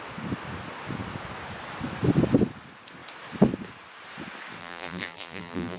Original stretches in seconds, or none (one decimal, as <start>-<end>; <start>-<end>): 0.0-4.6